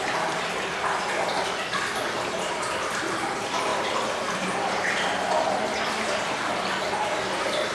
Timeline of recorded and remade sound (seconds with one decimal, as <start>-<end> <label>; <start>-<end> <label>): 0.0-7.7 recorded

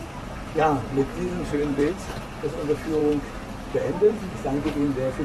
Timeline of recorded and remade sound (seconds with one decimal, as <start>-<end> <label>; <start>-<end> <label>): 0.0-1.1 recorded; 1.1-2.2 remade; 2.2-5.2 recorded

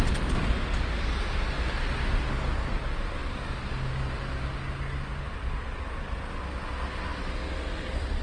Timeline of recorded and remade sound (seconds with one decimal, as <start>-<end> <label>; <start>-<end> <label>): 0.0-8.2 recorded

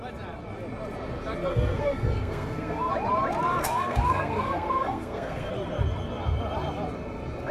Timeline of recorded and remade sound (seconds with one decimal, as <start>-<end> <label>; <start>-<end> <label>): 0.0-1.5 recorded; 1.5-2.9 remade; 2.9-3.5 recorded; 3.5-5.5 remade; 5.5-7.5 recorded

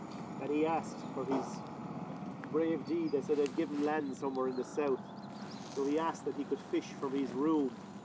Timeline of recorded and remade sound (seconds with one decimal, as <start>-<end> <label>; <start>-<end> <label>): 0.0-8.0 recorded

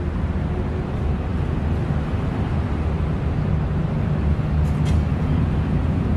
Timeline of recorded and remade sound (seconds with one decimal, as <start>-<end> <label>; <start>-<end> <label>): 0.0-5.1 recorded; 5.1-6.2 remade

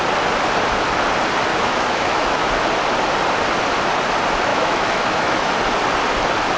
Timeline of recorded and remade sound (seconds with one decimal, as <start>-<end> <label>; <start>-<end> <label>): 0.0-1.5 recorded; 1.5-2.5 remade; 2.5-4.5 recorded; 4.5-5.5 remade; 5.5-6.6 recorded